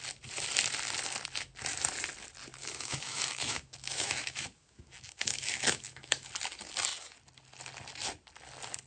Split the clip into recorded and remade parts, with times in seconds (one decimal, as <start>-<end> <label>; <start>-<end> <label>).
0.0-2.6 recorded; 2.6-6.3 remade; 6.3-8.9 recorded